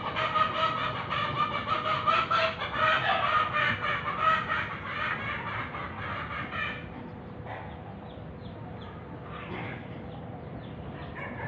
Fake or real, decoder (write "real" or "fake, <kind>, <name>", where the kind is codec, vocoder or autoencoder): real